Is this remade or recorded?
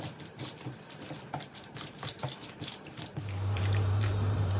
remade